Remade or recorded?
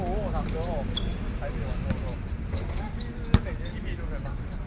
recorded